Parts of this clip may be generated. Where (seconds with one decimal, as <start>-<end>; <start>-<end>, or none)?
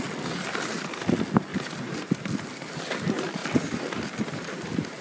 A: none